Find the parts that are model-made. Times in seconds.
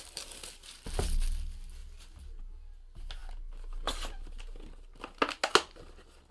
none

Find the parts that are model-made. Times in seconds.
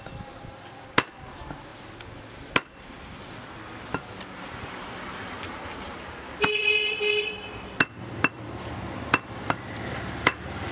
none